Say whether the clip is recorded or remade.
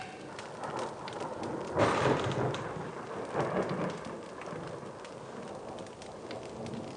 recorded